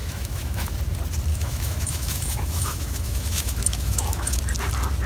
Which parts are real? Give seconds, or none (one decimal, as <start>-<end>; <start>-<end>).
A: 0.7-1.3; 4.4-5.1